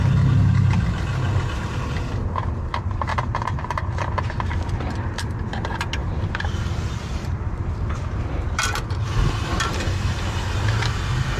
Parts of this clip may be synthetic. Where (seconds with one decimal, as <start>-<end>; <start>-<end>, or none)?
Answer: 3.1-3.6; 6.0-9.7